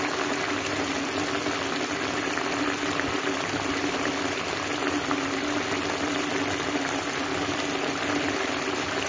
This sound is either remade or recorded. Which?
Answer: recorded